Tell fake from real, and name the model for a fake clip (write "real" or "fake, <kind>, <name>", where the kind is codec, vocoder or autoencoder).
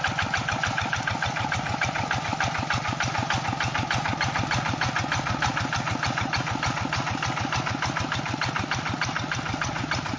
real